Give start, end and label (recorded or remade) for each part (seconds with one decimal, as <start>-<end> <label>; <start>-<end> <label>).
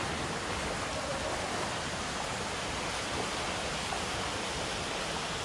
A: 0.0-5.4 recorded